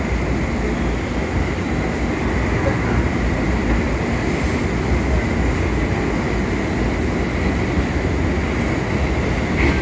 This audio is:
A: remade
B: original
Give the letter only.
B